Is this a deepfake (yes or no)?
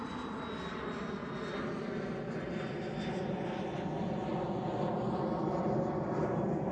no